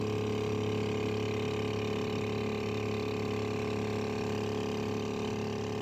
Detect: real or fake real